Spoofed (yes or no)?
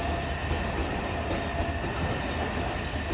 no